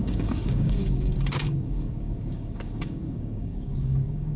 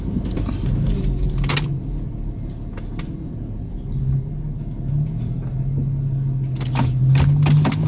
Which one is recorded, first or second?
second